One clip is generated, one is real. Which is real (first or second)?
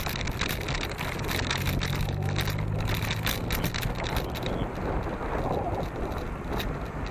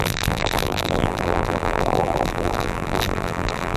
first